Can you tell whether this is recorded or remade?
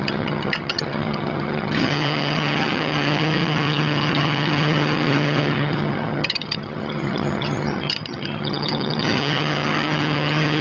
remade